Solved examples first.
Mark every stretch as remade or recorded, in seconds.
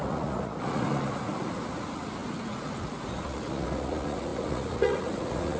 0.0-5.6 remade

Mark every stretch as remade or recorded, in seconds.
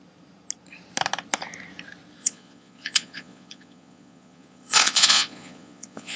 0.0-2.2 recorded; 2.2-6.2 remade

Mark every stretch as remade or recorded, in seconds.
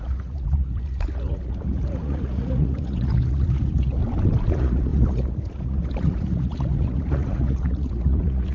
0.0-4.0 remade; 4.0-4.5 recorded; 4.5-8.5 remade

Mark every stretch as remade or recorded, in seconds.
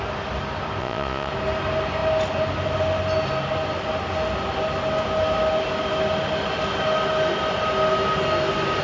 0.0-0.8 recorded; 0.8-1.3 remade; 1.3-8.8 recorded